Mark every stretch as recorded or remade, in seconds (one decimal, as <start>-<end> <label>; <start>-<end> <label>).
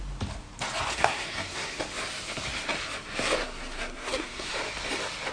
0.0-0.9 recorded; 0.9-1.8 remade; 1.8-3.4 recorded; 3.4-4.5 remade; 4.5-5.3 recorded